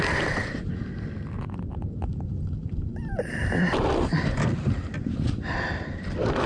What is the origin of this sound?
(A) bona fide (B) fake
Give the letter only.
A